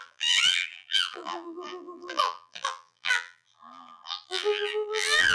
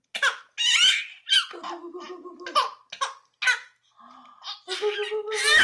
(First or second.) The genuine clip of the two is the second